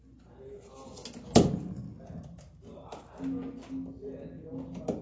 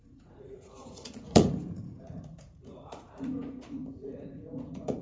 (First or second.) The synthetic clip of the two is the second